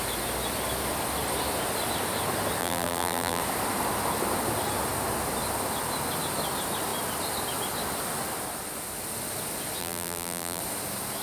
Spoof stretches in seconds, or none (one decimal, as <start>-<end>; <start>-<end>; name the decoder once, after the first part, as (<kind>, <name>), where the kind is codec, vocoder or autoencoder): 2.6-3.4 (vocoder, BigVGAN v2); 9.8-10.6